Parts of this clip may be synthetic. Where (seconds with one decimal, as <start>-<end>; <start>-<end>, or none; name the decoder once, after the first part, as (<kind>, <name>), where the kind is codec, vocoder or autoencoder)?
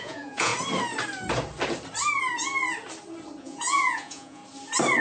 0.0-0.5 (vocoder, Vocos); 3.4-4.4